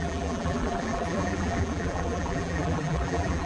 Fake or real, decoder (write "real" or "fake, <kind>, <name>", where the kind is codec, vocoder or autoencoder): fake, vocoder, BigVGAN v2